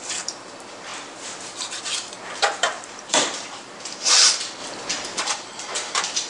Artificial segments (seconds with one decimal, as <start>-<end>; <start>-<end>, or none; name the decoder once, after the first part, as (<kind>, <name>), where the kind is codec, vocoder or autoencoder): 0.0-0.9 (vocoder, BigVGAN v2); 2.2-6.3